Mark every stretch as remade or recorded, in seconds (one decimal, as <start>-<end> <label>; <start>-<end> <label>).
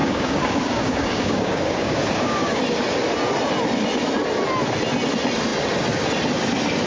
0.0-2.6 remade; 2.6-6.9 recorded